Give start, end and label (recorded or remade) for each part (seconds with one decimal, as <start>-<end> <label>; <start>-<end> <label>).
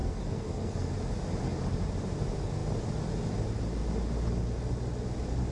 0.0-0.9 remade; 0.9-5.5 recorded